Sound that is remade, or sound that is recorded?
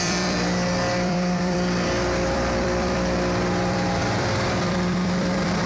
remade